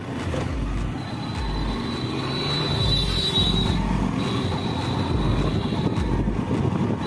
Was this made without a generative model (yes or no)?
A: yes